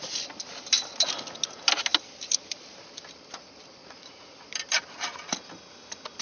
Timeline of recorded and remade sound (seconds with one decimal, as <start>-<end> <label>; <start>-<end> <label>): 0.0-3.8 recorded; 3.8-4.4 remade; 4.4-6.2 recorded